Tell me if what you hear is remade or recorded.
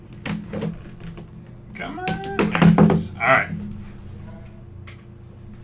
recorded